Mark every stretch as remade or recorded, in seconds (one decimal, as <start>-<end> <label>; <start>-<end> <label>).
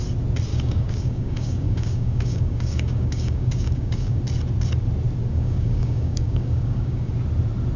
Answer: 0.0-0.5 recorded; 0.5-4.2 remade; 4.2-5.3 recorded; 5.3-7.1 remade; 7.1-7.8 recorded